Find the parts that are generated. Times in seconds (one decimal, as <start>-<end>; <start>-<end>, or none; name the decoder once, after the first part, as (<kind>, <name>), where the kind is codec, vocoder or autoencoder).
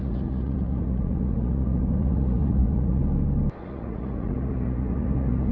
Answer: 0.0-3.0 (vocoder, Vocos); 3.6-5.5